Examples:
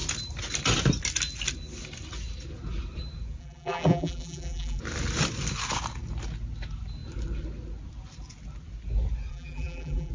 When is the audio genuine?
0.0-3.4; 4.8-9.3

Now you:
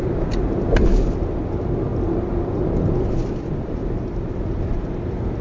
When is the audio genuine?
0.0-1.9; 3.5-5.4

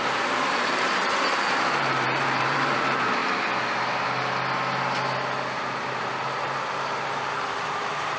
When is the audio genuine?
3.2-5.8